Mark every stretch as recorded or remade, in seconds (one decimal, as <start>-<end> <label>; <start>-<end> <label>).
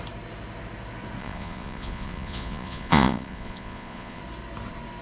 0.0-1.2 recorded; 1.2-4.2 remade; 4.2-5.0 recorded